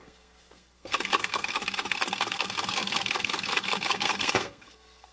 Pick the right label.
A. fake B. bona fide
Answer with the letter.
A